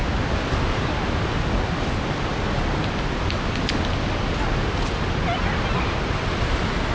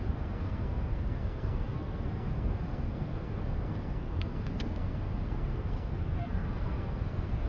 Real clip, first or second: first